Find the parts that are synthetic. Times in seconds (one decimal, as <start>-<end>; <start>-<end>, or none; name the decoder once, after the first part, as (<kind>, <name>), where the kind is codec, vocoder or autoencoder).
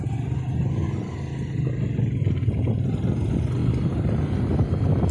none